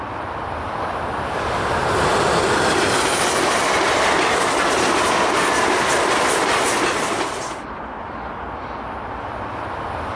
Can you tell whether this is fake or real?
real